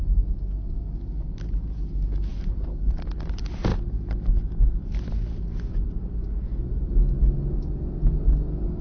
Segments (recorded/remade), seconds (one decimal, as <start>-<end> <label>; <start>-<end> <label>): 0.0-8.8 recorded